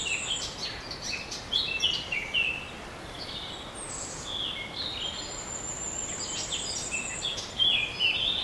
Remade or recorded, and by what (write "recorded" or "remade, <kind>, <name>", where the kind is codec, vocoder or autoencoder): recorded